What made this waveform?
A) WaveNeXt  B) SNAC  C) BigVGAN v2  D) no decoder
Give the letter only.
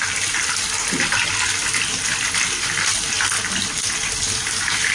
D